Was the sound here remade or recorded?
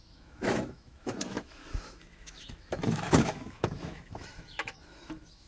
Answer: remade